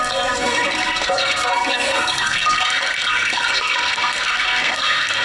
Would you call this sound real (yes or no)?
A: no